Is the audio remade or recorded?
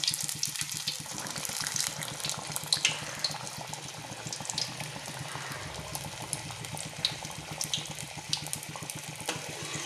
recorded